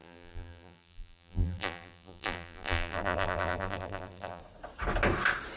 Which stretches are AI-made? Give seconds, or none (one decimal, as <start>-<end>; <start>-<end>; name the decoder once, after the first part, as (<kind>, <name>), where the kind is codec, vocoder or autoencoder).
0.0-4.4 (vocoder, BigVGAN v2)